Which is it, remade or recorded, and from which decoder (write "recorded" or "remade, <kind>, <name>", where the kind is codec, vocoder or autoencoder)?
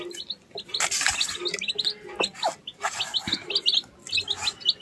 recorded